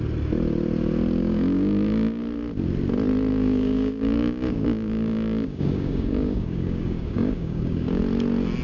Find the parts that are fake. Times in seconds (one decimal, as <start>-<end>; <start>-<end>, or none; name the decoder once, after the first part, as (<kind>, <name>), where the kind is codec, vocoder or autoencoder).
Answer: 1.2-2.2 (codec, DAC); 3.3-8.0